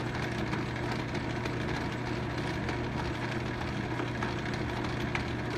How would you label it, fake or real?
real